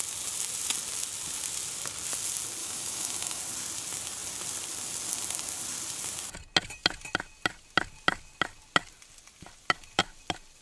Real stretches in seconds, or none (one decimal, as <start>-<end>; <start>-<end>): 0.0-2.6; 3.4-10.6